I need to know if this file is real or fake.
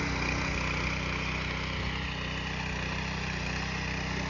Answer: real